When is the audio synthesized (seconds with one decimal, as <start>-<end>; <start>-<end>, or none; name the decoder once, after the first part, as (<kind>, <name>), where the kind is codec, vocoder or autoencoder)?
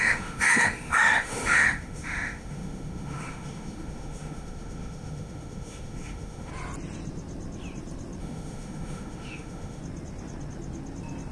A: 0.0-6.5 (autoencoder, DAC-VAE); 8.2-9.8